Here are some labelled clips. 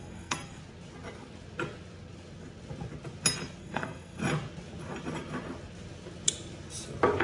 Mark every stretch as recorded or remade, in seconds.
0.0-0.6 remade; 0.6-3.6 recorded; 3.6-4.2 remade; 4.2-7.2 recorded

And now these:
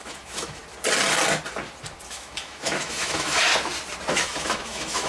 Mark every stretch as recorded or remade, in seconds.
0.0-0.6 remade; 0.6-2.1 recorded; 2.1-3.5 remade; 3.5-4.1 recorded; 4.1-5.1 remade